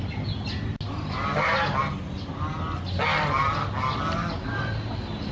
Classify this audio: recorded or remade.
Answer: recorded